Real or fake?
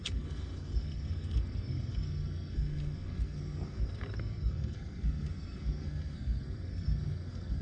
fake